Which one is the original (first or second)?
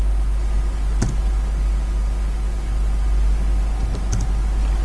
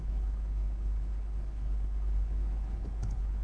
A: first